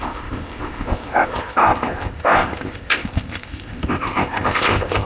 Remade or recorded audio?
remade